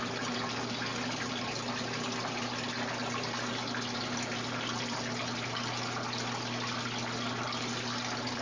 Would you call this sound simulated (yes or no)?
no